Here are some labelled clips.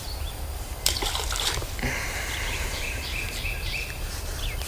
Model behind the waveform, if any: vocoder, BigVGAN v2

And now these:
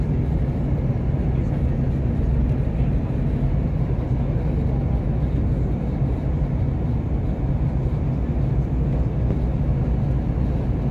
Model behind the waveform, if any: none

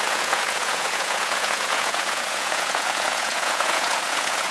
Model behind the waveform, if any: vocoder, Vocos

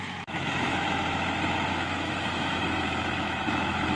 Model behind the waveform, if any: autoencoder, DAC-VAE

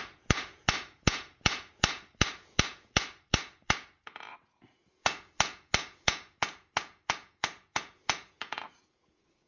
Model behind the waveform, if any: vocoder, Vocos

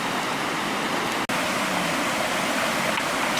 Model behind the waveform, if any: none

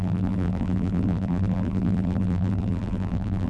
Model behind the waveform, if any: vocoder, BigVGAN v2